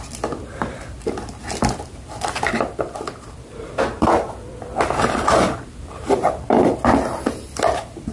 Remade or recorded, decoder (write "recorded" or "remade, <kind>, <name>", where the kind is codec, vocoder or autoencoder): remade, vocoder, BigVGAN v2